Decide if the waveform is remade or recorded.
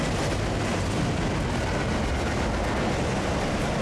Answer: recorded